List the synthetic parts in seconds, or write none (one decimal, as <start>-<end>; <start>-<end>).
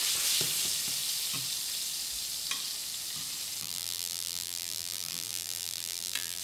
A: 3.6-6.4